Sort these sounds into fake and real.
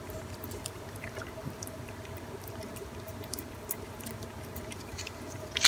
fake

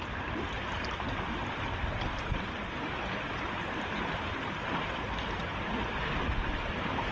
real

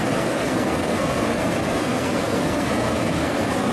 fake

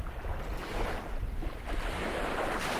real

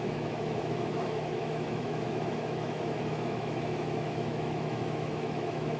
fake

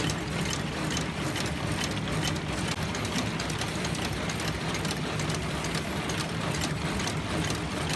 real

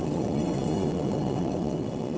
fake